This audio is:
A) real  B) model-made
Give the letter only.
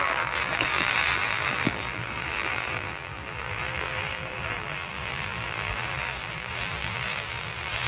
B